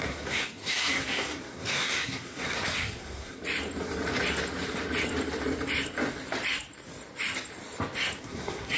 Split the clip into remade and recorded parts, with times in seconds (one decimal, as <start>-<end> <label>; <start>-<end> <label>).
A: 0.0-3.4 remade; 3.4-8.2 recorded; 8.2-8.8 remade